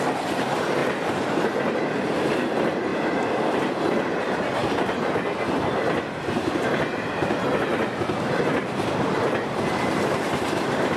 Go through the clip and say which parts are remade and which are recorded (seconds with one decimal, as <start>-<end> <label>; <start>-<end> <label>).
0.0-0.8 remade; 0.8-1.9 recorded; 1.9-2.9 remade; 2.9-4.1 recorded; 4.1-4.6 remade; 4.6-8.7 recorded; 8.7-11.0 remade